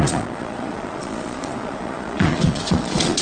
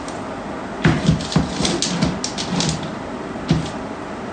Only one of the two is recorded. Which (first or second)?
second